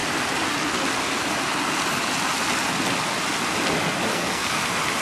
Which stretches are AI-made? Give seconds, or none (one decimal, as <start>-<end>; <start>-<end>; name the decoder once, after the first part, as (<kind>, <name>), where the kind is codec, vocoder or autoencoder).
4.1-4.6 (codec, SNAC)